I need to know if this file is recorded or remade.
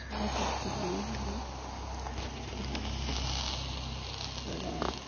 recorded